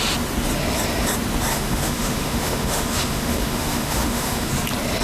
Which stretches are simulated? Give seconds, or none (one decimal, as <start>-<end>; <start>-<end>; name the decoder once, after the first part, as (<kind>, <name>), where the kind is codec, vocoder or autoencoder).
1.5-4.5 (autoencoder, DAC-VAE)